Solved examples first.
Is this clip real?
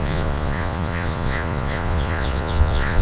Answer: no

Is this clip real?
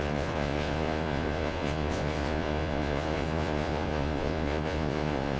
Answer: no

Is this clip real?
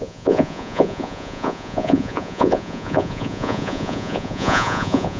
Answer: no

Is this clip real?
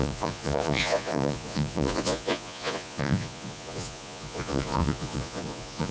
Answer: no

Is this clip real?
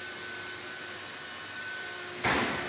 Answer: yes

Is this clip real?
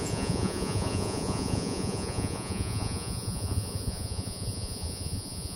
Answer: no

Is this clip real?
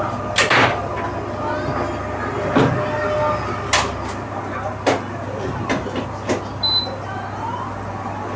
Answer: yes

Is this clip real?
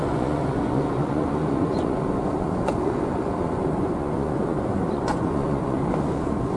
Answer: no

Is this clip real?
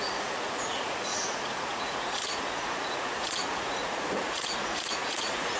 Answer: no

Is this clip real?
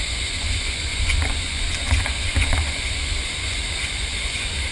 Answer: no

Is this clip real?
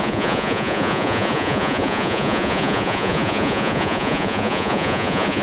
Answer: no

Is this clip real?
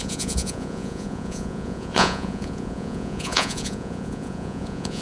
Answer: no